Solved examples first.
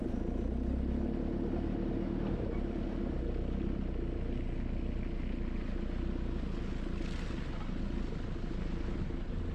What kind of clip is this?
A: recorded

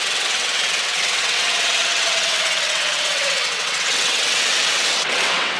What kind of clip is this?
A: remade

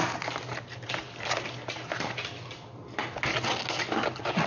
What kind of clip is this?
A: recorded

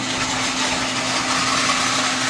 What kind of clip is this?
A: recorded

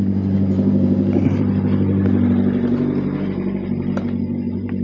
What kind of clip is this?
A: recorded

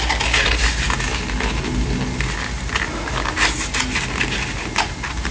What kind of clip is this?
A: recorded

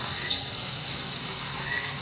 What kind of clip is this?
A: remade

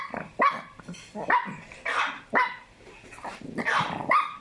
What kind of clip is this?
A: remade